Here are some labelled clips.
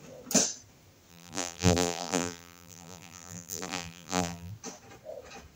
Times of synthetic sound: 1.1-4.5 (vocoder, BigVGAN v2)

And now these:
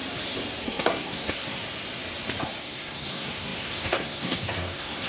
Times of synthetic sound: 0.6-1.6 (codec, SNAC); 2.6-5.1

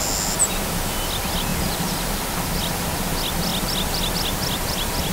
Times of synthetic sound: 0.4-1.1 (vocoder, BigVGAN v2); 1.5-2.1; 3.5-4.1

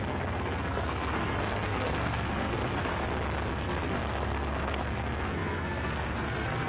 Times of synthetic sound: 0.0-2.9 (codec, SNAC); 3.5-6.7

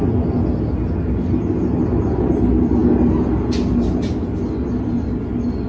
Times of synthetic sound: none